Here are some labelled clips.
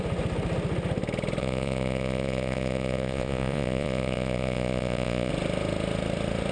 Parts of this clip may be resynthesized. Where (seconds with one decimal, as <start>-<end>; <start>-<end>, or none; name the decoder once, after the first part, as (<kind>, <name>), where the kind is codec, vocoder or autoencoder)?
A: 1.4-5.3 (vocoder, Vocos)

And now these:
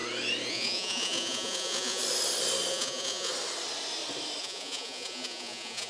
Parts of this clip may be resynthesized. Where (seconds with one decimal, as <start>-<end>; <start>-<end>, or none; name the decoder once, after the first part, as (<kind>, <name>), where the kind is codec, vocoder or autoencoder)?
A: 0.5-2.0 (vocoder, Vocos); 2.7-3.3; 4.4-5.9

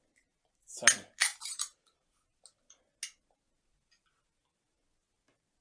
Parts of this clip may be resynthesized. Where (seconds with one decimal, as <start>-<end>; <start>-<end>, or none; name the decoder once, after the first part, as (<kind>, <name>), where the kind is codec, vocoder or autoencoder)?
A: 1.3-2.4 (vocoder, BigVGAN v2)